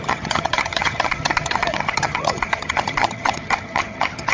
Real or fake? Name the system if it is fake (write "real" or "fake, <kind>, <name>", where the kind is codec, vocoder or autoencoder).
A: fake, vocoder, HiFi-GAN